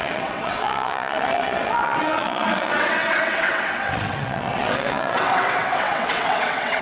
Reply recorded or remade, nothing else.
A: remade